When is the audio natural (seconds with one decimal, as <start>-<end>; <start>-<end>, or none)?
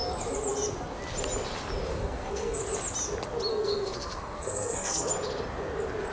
0.0-1.9; 2.6-3.5; 5.1-6.1